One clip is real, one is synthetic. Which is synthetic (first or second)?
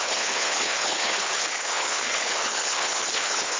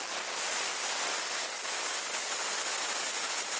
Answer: first